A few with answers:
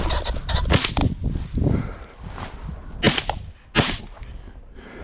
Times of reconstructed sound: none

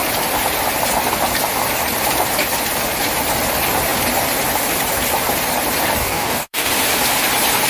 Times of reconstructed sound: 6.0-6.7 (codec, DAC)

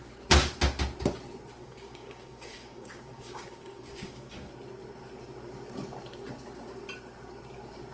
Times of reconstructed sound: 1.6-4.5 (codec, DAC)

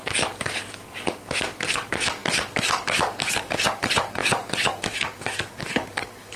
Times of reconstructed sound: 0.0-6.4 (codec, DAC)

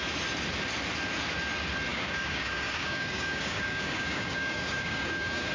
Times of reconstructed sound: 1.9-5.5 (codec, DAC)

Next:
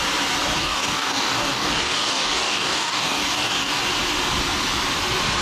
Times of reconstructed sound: 0.6-3.8 (codec, DAC)

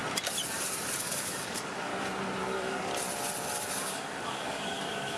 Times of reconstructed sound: 1.0-1.9 (codec, DAC); 2.4-2.9; 3.7-5.2